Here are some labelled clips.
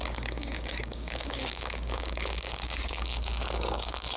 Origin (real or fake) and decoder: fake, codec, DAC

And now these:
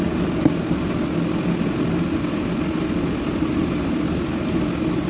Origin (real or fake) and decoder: real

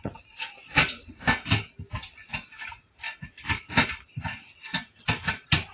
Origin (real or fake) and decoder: real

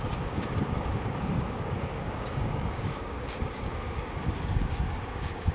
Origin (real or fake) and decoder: fake, codec, DAC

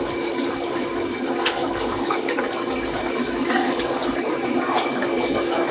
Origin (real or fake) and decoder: fake, codec, DAC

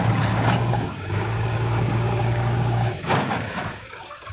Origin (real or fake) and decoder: fake, codec, DAC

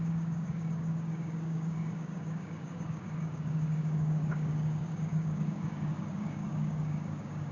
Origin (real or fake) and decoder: fake, codec, DAC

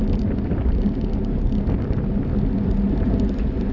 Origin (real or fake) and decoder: real